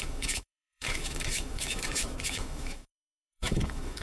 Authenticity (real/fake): fake